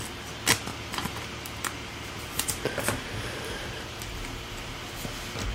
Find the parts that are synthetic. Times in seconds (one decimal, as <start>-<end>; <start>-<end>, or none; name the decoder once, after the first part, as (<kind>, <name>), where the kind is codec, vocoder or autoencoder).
0.7-4.0 (vocoder, BigVGAN v2)